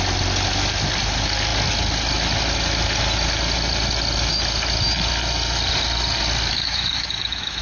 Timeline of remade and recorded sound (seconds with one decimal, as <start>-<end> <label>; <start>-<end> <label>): 0.0-6.5 recorded; 6.5-7.6 remade